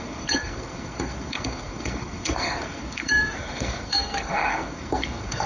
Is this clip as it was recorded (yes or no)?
no